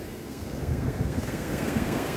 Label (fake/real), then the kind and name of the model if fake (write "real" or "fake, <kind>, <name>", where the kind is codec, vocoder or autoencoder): fake, codec, SNAC